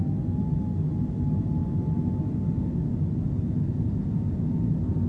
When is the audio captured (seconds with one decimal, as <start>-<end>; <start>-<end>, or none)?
0.0-5.1